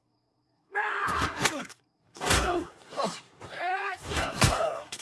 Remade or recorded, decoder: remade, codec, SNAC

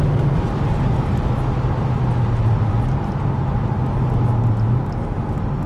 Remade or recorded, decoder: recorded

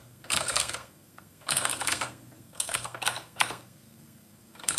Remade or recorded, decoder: remade, codec, SNAC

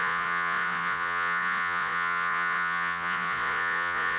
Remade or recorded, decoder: remade, vocoder, Vocos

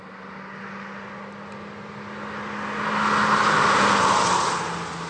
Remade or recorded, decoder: recorded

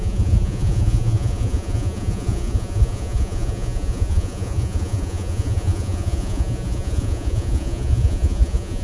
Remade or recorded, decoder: remade, vocoder, Vocos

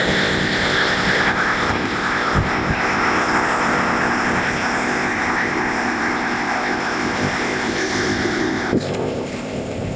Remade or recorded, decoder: remade, codec, ZipCodec